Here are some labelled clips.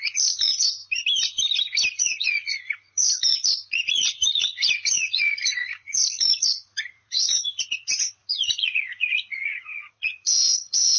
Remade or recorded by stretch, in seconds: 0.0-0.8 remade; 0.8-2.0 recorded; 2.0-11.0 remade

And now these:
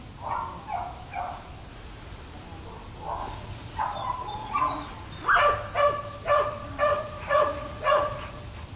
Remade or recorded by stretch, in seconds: 0.0-1.7 recorded; 1.7-2.2 remade; 2.2-3.2 recorded; 3.2-3.8 remade; 3.8-4.4 recorded; 4.4-4.9 remade; 4.9-6.9 recorded; 6.9-8.4 remade; 8.4-8.8 recorded

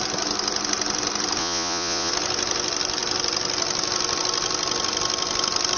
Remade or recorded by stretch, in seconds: 0.0-1.4 recorded; 1.4-2.1 remade; 2.1-5.8 recorded

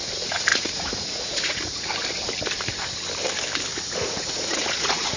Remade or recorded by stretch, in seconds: 0.0-0.5 recorded; 0.5-1.9 remade; 1.9-3.7 recorded; 3.7-5.2 remade

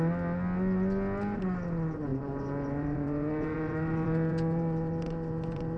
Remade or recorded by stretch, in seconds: 0.0-2.1 recorded; 2.1-5.8 remade

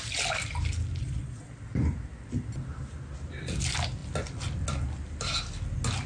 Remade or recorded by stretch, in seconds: 0.0-1.0 recorded; 1.0-1.5 remade; 1.5-6.1 recorded

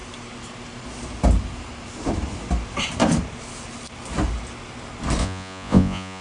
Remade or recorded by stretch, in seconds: 0.0-5.2 recorded; 5.2-6.2 remade